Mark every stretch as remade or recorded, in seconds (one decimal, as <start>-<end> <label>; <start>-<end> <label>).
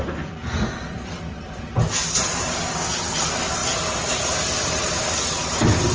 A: 0.0-3.6 remade; 3.6-5.9 recorded